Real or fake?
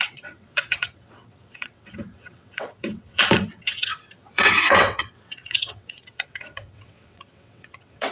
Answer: fake